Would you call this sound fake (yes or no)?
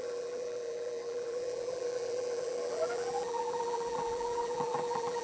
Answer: yes